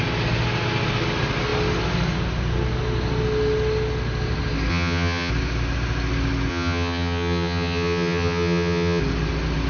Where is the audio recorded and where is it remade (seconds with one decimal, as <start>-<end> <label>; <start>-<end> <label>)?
0.0-4.7 recorded; 4.7-5.3 remade; 5.3-6.5 recorded; 6.5-9.0 remade; 9.0-9.7 recorded